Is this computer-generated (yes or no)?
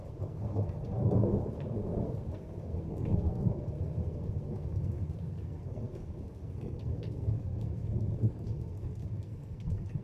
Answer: yes